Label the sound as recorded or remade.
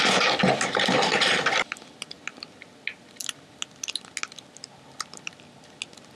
recorded